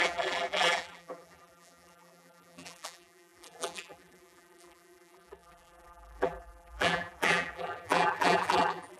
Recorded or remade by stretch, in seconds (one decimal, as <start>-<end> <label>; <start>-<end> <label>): 0.0-9.0 remade